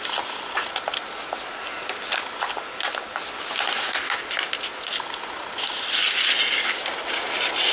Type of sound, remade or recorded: recorded